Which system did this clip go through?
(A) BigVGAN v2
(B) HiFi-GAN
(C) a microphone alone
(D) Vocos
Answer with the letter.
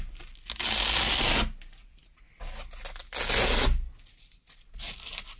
C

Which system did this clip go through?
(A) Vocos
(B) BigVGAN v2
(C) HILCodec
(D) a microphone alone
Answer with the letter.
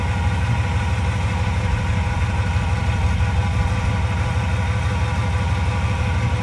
D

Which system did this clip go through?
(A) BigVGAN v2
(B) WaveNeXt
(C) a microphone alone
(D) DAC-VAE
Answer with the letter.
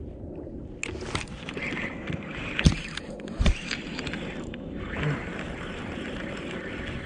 C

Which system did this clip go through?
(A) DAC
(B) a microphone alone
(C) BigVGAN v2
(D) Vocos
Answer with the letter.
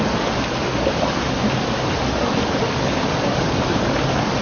B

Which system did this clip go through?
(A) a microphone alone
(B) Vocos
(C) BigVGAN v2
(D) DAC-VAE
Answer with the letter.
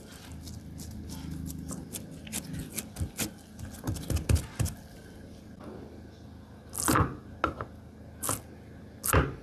A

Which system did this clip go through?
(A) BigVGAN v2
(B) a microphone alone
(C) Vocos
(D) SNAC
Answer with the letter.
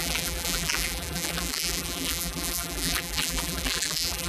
A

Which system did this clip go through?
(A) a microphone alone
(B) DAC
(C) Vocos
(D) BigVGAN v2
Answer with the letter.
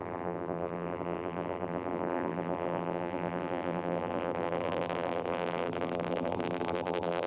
D